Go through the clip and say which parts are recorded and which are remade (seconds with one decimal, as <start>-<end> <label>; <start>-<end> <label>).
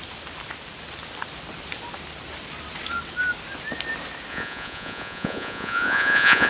0.0-4.3 recorded; 4.3-6.5 remade